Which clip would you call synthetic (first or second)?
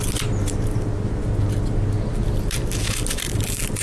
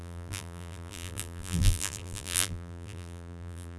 second